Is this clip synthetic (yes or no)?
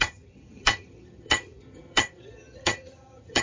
yes